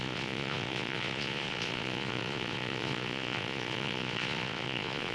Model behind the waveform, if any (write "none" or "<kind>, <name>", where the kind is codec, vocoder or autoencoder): vocoder, Vocos